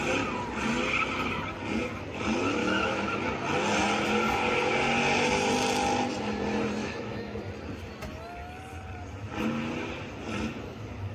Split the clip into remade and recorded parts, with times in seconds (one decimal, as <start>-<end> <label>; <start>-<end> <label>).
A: 0.0-2.6 recorded; 2.6-3.2 remade; 3.2-6.8 recorded; 6.8-7.4 remade; 7.4-11.1 recorded